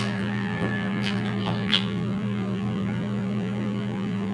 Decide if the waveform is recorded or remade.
remade